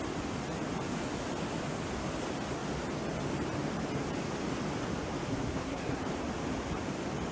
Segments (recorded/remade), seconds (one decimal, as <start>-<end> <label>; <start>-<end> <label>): 0.0-5.3 recorded; 5.3-6.0 remade; 6.0-7.3 recorded